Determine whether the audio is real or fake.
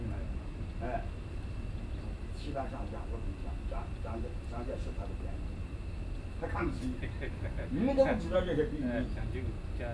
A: real